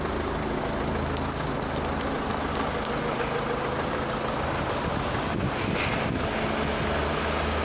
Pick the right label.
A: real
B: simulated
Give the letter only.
A